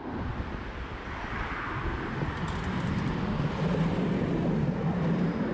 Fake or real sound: real